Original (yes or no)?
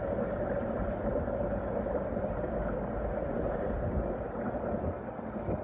yes